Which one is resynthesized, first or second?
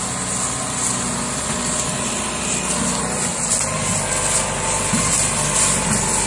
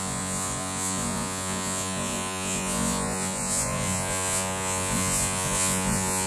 second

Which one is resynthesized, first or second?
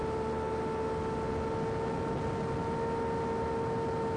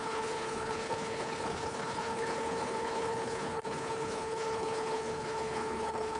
second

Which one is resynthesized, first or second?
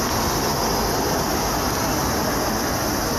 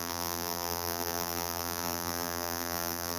second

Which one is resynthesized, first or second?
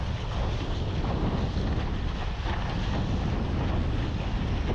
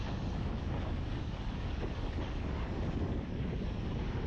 second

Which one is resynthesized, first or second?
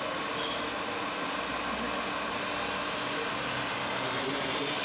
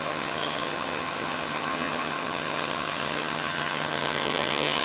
second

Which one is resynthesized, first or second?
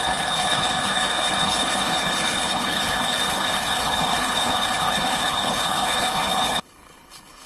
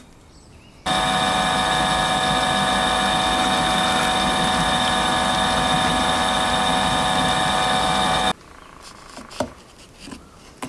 first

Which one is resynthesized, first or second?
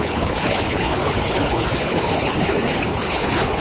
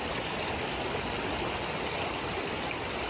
first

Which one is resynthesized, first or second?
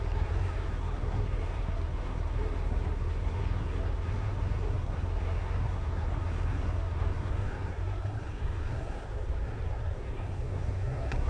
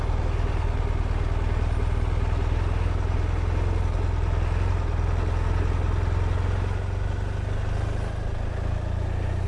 first